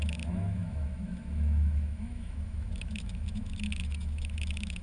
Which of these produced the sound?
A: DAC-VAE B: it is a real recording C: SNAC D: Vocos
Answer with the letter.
A